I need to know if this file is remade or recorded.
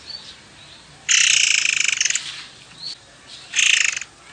recorded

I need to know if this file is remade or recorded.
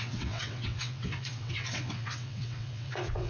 remade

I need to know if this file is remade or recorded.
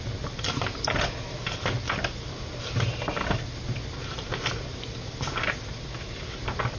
recorded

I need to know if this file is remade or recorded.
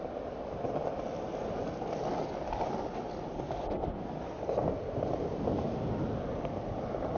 recorded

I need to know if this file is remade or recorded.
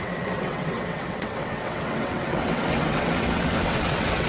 remade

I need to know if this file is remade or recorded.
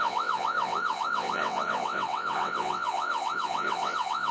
remade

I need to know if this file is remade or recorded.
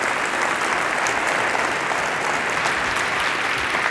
recorded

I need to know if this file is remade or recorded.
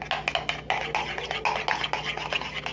recorded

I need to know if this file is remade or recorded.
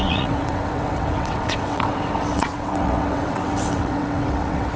remade